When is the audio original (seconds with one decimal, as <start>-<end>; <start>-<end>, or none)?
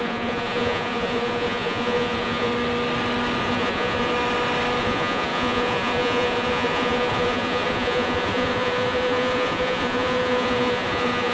2.5-3.4; 4.1-4.8